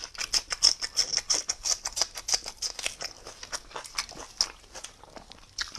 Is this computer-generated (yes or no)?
no